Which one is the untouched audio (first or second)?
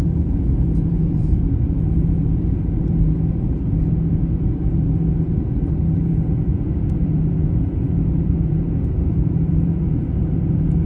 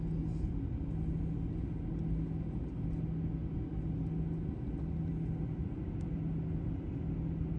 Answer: second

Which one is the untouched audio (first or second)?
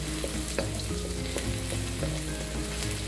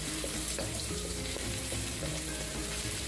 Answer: first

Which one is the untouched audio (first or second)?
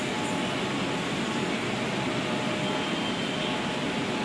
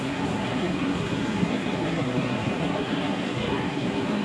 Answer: first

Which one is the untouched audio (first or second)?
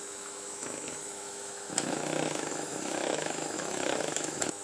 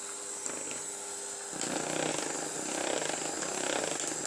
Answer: second